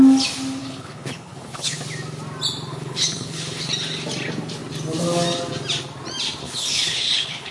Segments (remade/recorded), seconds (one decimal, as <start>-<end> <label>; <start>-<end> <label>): 0.0-0.6 recorded; 0.6-1.8 remade; 1.8-2.7 recorded; 2.7-3.7 remade; 3.7-6.4 recorded; 6.4-7.5 remade